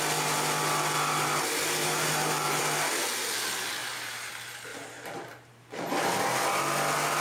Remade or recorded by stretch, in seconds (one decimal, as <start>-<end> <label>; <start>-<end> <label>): 0.0-1.8 recorded; 1.8-2.6 remade; 2.6-3.8 recorded; 3.8-4.3 remade; 4.3-4.7 recorded; 4.7-5.8 remade; 5.8-7.2 recorded

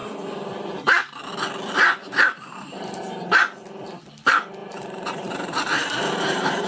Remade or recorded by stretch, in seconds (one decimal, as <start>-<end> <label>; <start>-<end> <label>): 0.0-1.3 remade; 1.3-2.0 recorded; 2.0-3.0 remade; 3.0-4.6 recorded; 4.6-6.7 remade